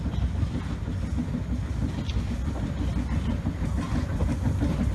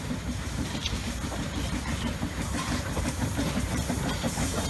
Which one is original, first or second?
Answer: first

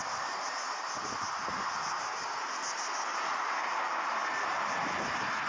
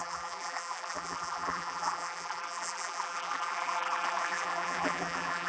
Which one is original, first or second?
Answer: first